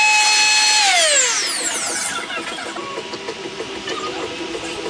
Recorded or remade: recorded